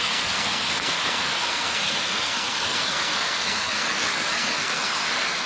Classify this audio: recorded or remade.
remade